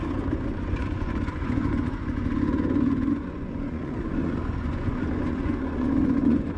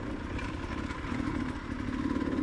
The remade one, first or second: first